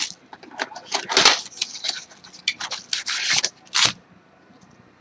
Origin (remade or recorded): recorded